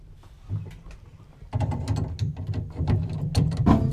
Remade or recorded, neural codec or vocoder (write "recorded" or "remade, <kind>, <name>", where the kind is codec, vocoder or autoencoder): recorded